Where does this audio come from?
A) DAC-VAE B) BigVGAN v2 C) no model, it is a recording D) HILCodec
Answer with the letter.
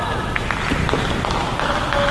C